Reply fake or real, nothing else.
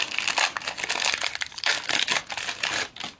real